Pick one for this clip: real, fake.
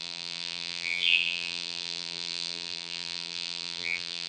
fake